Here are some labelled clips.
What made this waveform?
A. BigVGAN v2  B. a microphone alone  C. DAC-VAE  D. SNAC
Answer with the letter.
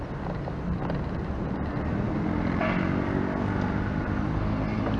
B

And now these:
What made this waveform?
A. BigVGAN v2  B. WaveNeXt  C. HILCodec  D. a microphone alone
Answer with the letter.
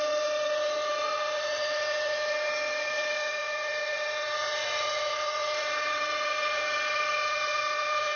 B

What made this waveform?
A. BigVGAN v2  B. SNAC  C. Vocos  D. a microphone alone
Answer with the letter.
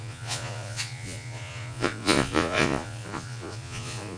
C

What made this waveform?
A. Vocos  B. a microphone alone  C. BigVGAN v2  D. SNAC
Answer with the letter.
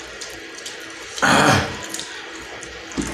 C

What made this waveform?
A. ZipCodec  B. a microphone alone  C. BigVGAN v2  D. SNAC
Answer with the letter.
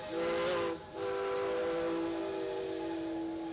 B